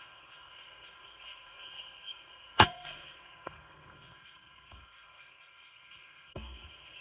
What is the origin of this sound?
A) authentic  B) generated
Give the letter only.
B